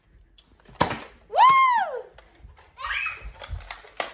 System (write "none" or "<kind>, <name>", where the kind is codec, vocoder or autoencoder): none